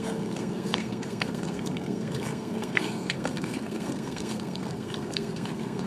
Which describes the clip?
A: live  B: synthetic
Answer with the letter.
B